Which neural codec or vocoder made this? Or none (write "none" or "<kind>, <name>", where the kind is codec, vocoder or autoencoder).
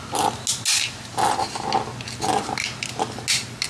none